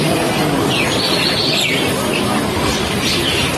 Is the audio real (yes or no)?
yes